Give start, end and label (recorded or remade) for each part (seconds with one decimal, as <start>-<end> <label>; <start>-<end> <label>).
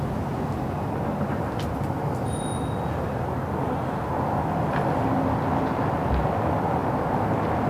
0.0-6.8 recorded; 6.8-7.7 remade